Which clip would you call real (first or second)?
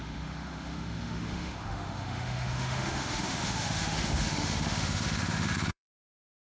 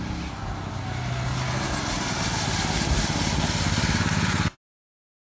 second